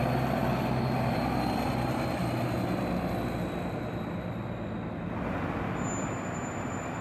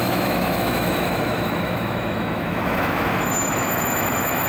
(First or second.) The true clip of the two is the first